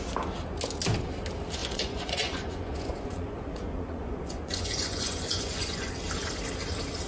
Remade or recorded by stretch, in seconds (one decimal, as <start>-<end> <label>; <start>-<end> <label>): 0.0-1.6 recorded; 1.6-5.9 remade; 5.9-7.1 recorded